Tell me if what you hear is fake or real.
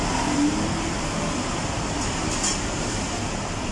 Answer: real